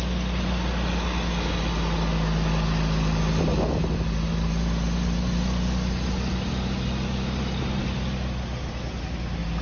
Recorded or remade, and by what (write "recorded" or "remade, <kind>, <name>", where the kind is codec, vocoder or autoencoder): recorded